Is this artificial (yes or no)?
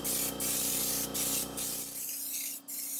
no